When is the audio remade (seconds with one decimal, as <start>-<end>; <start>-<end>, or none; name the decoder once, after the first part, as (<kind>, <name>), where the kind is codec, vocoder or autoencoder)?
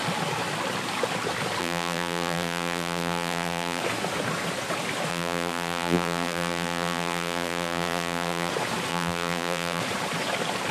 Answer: 1.6-3.8 (vocoder, BigVGAN v2); 5.1-8.5; 8.9-9.8